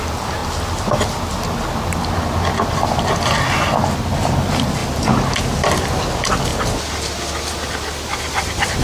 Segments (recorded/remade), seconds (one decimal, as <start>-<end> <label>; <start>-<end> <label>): 0.0-4.8 recorded; 4.8-5.3 remade; 5.3-8.8 recorded